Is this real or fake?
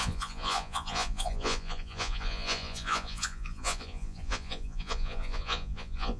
fake